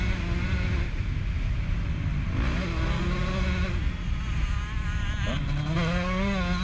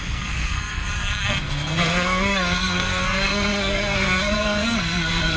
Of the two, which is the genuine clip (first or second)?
first